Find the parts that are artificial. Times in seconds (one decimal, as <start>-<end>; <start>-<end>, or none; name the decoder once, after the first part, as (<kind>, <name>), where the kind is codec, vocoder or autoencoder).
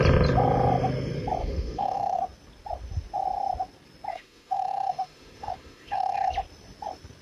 1.4-2.2 (autoencoder, DAC-VAE); 4.1-6.3